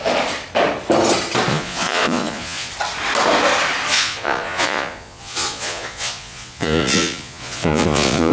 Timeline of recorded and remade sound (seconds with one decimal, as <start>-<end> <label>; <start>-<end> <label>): 0.0-1.5 recorded; 1.5-2.7 remade; 2.7-3.9 recorded; 3.9-8.3 remade